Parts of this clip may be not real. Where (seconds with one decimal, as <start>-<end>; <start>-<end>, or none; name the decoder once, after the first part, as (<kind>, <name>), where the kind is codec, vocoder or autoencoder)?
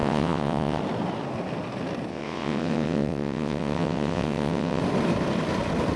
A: 0.0-0.8 (vocoder, WaveNeXt); 2.1-4.8